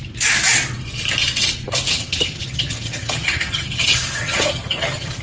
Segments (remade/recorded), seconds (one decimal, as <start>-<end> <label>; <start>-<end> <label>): 0.0-1.9 recorded; 1.9-5.2 remade